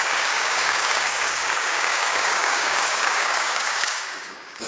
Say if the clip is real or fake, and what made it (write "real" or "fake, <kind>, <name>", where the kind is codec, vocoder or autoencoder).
fake, codec, DAC